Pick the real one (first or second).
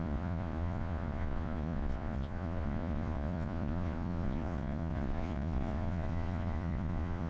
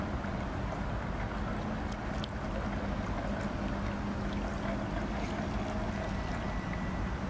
second